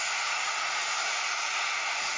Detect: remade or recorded remade